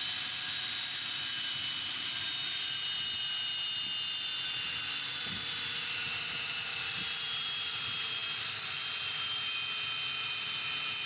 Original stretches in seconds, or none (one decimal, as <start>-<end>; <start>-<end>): 0.0-11.1